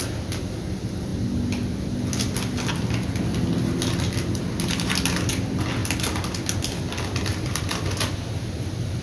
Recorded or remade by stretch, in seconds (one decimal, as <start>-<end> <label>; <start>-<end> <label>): 0.0-7.3 recorded; 7.3-7.8 remade; 7.8-9.0 recorded